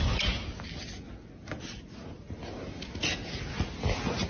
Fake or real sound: real